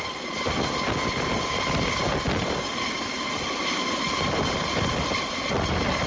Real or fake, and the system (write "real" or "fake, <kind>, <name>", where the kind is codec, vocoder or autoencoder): real